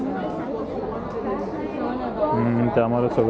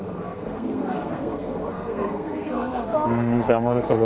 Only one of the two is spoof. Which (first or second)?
second